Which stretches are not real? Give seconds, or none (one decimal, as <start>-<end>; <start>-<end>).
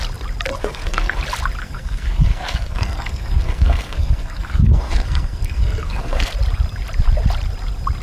0.5-1.2; 1.6-6.3